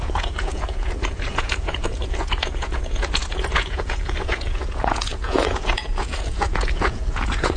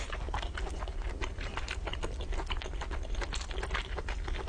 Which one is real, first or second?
second